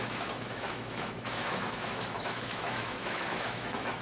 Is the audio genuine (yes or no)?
no